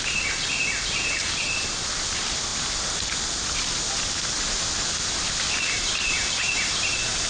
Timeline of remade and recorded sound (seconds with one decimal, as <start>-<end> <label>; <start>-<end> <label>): 0.0-7.3 recorded